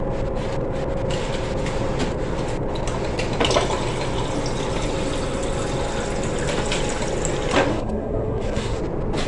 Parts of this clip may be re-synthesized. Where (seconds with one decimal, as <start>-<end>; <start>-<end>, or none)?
7.7-8.8